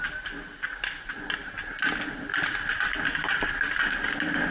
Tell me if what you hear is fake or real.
real